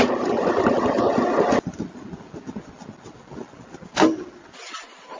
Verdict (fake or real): real